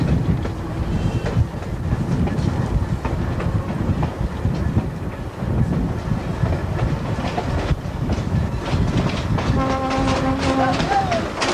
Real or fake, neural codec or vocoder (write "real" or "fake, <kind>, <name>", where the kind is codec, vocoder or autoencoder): real